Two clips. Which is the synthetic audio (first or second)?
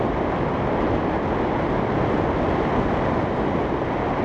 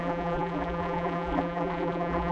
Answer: second